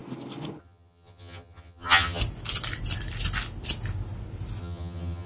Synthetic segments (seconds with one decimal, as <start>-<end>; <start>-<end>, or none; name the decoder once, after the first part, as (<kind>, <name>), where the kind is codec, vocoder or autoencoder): 0.6-2.2 (vocoder, HiFi-GAN); 4.6-5.3